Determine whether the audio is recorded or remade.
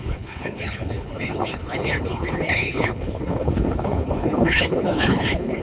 remade